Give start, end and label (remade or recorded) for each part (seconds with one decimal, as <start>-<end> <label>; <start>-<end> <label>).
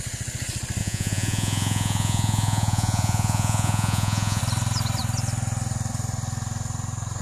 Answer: 0.0-0.8 recorded; 0.8-4.4 remade; 4.4-7.2 recorded